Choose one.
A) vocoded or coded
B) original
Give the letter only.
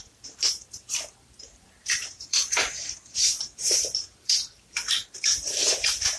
A